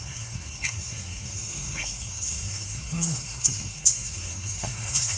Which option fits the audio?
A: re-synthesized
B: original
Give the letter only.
A